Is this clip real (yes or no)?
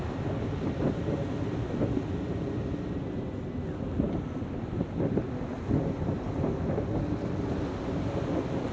yes